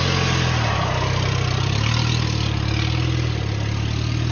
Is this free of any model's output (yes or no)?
yes